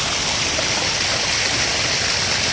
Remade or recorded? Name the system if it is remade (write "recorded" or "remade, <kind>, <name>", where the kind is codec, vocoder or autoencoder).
recorded